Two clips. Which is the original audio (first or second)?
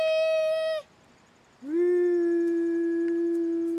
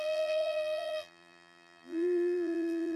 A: first